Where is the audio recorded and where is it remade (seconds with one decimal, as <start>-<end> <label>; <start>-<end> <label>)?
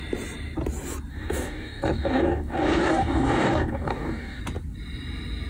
0.0-1.1 recorded; 1.1-4.4 remade; 4.4-5.5 recorded